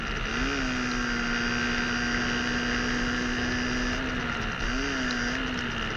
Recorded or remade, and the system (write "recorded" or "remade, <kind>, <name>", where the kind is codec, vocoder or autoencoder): recorded